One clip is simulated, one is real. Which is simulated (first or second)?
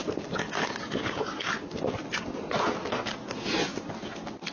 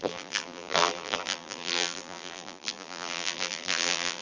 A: second